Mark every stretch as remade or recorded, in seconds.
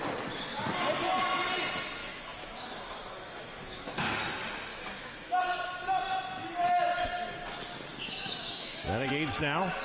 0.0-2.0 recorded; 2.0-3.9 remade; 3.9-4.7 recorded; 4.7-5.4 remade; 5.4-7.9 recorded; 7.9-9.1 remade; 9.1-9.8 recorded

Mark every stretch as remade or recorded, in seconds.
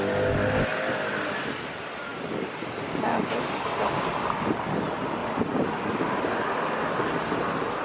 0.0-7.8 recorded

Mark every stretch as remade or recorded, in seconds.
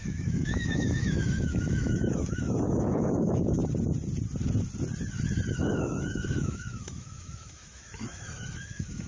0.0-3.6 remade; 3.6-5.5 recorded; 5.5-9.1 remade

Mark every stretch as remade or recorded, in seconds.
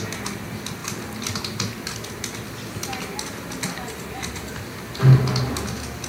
0.0-6.1 recorded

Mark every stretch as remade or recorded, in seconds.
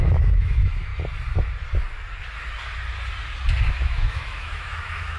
0.0-0.9 remade; 0.9-3.7 recorded; 3.7-5.2 remade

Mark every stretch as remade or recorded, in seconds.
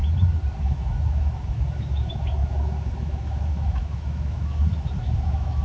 0.0-0.6 recorded; 0.6-5.6 remade